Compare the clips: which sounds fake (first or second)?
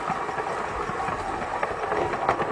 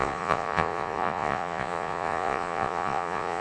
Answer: second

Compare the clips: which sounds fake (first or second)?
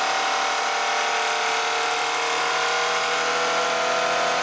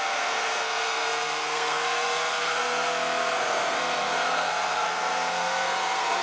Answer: second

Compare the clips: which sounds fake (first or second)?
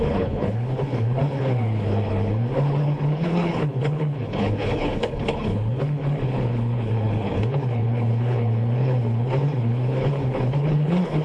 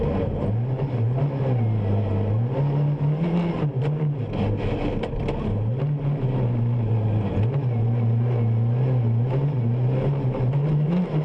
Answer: first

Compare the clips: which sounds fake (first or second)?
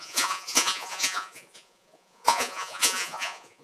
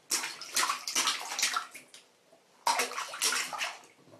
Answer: first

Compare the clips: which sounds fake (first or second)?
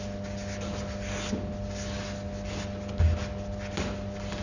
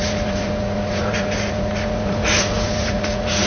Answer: second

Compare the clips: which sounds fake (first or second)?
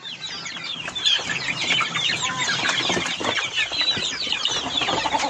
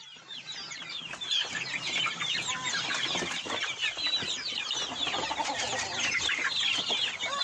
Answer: first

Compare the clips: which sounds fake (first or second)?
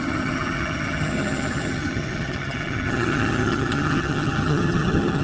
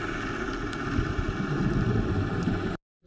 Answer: first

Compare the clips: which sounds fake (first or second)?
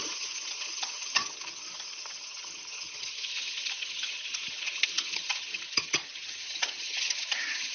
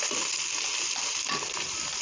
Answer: first